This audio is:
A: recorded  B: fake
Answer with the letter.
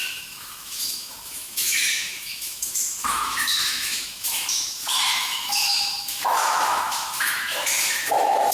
B